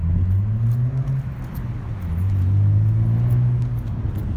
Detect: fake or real real